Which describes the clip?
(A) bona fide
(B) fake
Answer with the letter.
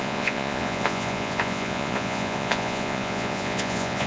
B